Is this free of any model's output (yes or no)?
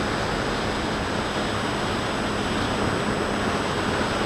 yes